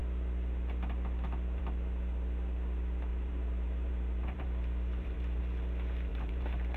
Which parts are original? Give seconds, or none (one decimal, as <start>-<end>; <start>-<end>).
0.0-3.1; 5.4-6.1